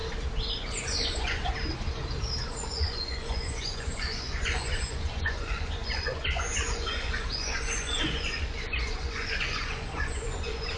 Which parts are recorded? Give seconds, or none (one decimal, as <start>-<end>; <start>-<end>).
0.0-0.5; 1.5-2.4